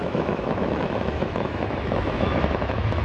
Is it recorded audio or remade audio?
remade